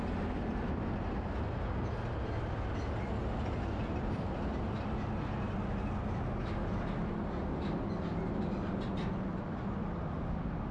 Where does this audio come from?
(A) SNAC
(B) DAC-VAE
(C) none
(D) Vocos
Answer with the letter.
C